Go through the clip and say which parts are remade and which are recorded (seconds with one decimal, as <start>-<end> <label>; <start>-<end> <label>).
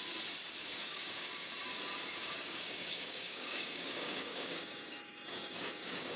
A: 0.0-0.6 recorded; 0.6-1.5 remade; 1.5-2.2 recorded; 2.2-6.2 remade